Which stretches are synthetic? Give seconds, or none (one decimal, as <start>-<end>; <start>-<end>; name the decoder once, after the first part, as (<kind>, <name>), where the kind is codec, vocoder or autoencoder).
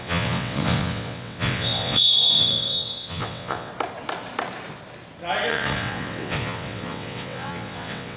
0.0-3.7 (vocoder, WaveNeXt); 5.5-8.2